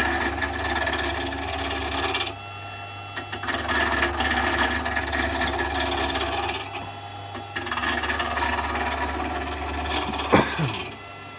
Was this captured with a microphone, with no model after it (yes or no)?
yes